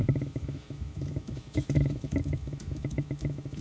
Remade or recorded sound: remade